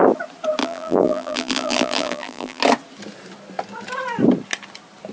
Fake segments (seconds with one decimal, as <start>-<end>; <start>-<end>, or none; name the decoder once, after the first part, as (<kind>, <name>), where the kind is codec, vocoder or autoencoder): 0.6-2.6 (vocoder, BigVGAN v2)